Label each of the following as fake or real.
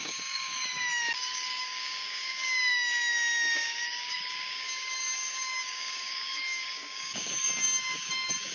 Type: fake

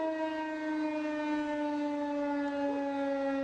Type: real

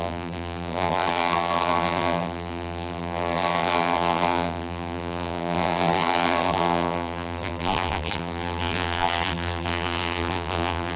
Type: fake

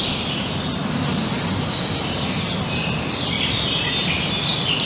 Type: real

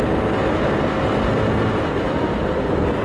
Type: real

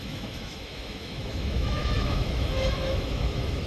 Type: fake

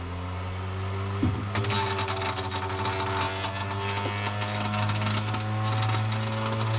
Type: real